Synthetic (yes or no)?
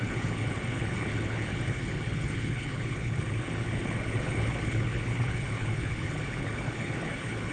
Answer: yes